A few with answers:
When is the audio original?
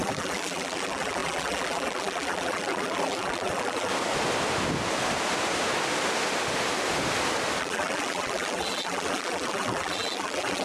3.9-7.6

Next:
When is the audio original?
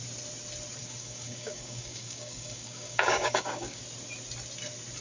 0.0-0.8; 3.8-5.0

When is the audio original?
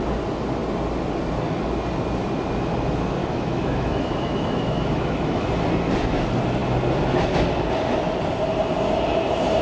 0.0-3.2; 5.5-9.6